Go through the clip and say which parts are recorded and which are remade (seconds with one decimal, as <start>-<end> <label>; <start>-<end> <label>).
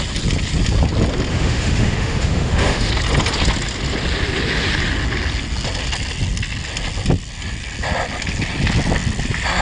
0.0-1.3 recorded; 1.3-2.9 remade; 2.9-9.6 recorded